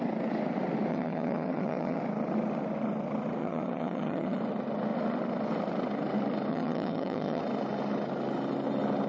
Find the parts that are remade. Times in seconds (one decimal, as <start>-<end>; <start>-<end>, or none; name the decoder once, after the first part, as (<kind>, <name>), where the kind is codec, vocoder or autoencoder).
0.9-2.0 (vocoder, HiFi-GAN); 3.4-4.4; 6.5-7.4